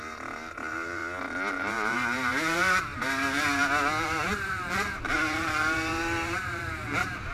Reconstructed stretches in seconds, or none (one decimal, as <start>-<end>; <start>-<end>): 0.0-1.0; 1.5-7.3